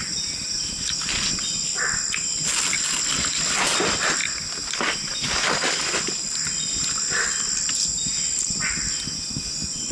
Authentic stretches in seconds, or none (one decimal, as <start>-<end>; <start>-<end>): 0.0-9.9

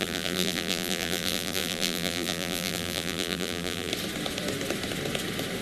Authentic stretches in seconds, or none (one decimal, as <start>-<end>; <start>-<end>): 3.9-5.6

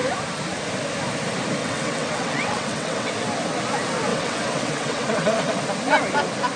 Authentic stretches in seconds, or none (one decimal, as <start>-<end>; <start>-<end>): 0.0-1.6; 3.1-4.1; 5.5-6.6

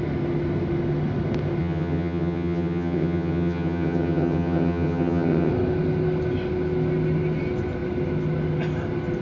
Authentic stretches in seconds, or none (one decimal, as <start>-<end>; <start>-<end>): 0.0-1.6; 5.5-9.2